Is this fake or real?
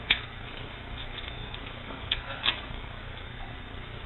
fake